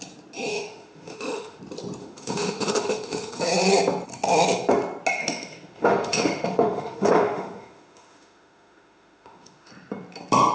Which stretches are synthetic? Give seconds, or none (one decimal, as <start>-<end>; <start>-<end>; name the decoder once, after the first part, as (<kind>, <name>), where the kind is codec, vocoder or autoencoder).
0.5-1.6 (autoencoder, DAC-VAE); 2.0-3.4; 5.2-9.7